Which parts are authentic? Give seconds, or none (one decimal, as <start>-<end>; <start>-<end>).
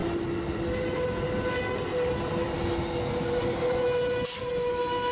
0.0-5.1